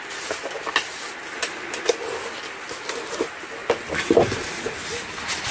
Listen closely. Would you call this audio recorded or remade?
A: recorded